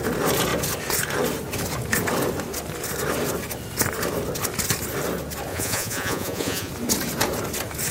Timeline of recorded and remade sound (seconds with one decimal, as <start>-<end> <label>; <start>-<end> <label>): 0.0-5.5 recorded; 5.5-6.7 remade; 6.7-7.9 recorded